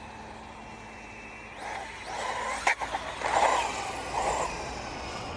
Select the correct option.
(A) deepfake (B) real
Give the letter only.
B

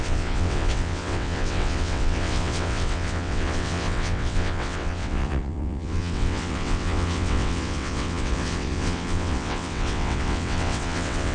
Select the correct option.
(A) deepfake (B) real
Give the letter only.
A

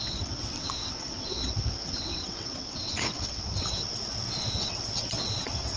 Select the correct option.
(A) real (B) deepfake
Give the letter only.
B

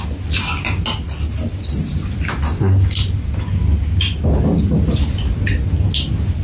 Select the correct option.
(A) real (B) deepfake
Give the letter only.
A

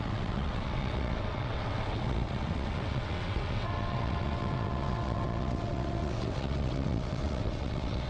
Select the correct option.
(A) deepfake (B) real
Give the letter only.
A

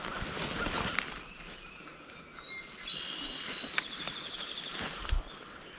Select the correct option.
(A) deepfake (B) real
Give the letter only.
B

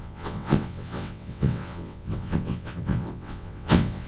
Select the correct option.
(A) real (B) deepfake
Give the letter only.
B